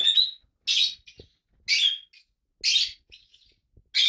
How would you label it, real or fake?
real